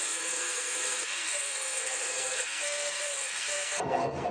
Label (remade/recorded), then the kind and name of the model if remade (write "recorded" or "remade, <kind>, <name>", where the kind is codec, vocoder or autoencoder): remade, codec, SNAC